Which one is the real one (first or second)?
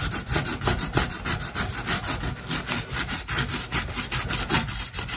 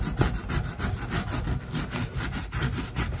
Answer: second